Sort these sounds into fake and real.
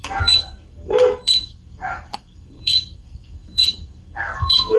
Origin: fake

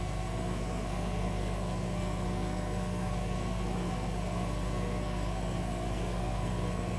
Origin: fake